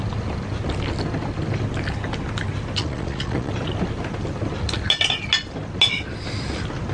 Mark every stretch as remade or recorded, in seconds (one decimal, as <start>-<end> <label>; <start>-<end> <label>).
0.0-2.8 recorded; 2.8-3.5 remade; 3.5-6.9 recorded